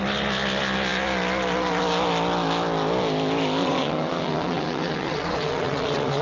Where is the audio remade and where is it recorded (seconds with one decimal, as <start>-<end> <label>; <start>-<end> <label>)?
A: 0.0-3.6 recorded; 3.6-6.2 remade